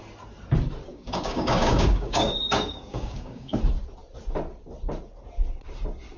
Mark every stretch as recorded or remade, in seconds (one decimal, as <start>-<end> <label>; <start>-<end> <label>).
0.0-0.9 recorded; 0.9-3.6 remade; 3.6-6.2 recorded